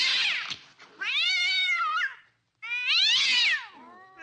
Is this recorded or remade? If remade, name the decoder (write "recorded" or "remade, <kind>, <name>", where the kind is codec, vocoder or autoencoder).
recorded